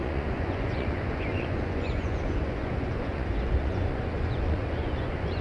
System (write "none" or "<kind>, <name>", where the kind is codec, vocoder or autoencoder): vocoder, Vocos